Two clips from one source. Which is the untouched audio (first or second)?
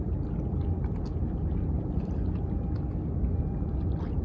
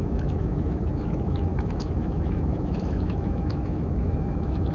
first